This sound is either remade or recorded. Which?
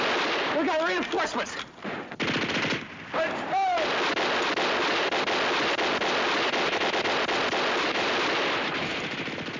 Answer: recorded